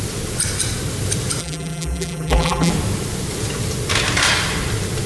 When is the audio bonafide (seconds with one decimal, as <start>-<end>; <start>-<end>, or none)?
0.0-1.4; 2.7-5.1